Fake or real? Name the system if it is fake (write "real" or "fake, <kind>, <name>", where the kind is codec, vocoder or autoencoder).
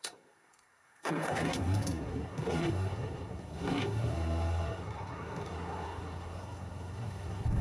fake, codec, SNAC